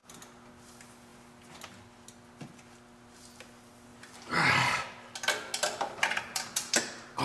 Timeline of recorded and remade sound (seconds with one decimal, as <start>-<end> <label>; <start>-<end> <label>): 0.0-3.9 recorded; 3.9-4.5 remade; 4.5-6.3 recorded; 6.3-7.2 remade